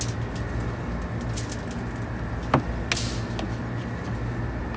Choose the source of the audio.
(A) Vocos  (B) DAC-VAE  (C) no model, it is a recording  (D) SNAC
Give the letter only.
C